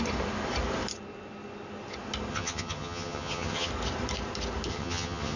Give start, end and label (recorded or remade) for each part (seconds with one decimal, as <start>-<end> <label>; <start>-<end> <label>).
0.0-2.3 recorded; 2.3-3.7 remade; 3.7-4.7 recorded; 4.7-5.4 remade